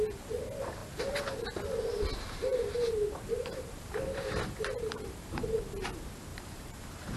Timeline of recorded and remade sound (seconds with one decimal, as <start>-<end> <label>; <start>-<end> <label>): 0.0-2.5 recorded; 2.5-5.6 remade; 5.6-6.3 recorded; 6.3-7.2 remade